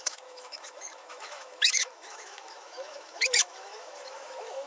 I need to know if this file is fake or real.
fake